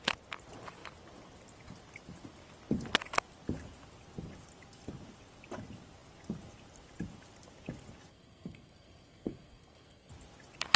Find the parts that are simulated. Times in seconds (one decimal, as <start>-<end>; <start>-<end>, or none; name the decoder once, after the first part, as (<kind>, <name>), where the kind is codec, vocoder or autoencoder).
8.1-10.1 (codec, SNAC)